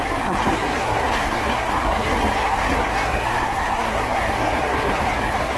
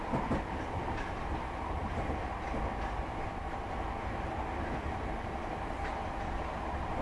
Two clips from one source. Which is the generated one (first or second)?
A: first